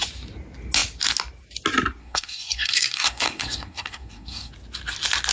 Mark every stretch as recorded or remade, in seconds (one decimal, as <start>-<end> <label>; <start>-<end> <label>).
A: 0.0-2.0 recorded; 2.0-4.5 remade; 4.5-5.3 recorded